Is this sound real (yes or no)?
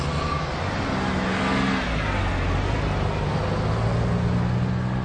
yes